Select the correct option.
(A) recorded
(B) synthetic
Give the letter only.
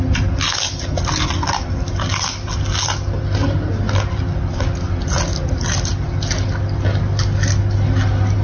A